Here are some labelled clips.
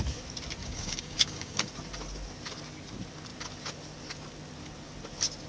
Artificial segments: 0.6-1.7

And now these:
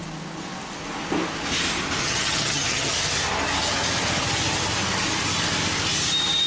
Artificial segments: 2.0-2.9